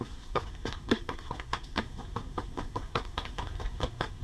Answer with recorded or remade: remade